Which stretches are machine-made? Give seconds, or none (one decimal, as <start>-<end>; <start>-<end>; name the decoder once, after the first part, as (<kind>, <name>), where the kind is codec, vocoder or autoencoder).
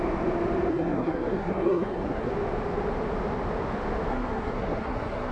0.7-2.3 (codec, SNAC); 4.1-5.3